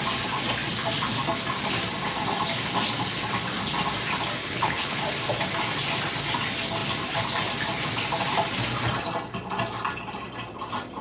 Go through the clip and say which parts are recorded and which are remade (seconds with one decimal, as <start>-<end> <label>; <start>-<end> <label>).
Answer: 0.0-4.4 recorded; 4.4-5.0 remade; 5.0-11.0 recorded